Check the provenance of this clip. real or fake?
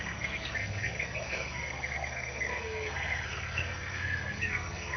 fake